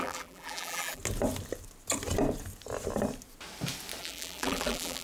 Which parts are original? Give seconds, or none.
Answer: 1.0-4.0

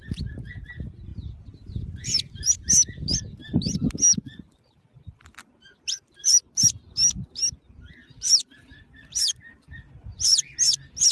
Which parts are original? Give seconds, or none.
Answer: 0.0-1.1; 6.3-8.0; 10.5-11.1

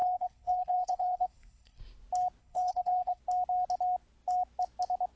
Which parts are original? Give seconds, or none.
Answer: 1.8-2.4; 3.2-5.2